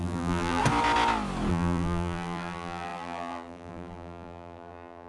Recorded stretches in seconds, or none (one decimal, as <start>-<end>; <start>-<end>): 0.6-1.5

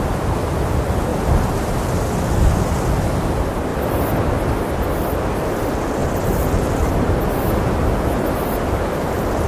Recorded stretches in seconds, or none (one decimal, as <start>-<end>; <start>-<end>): 0.0-6.0; 6.6-9.5

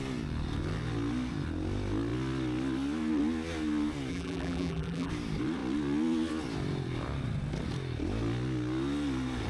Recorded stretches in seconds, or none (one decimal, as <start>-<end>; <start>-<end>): 0.0-4.1; 5.1-9.5

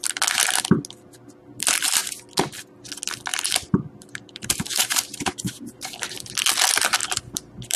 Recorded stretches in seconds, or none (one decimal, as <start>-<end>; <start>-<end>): 0.0-3.3; 6.3-7.0

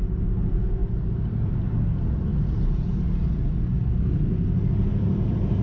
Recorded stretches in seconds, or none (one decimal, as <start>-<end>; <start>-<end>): 2.3-4.7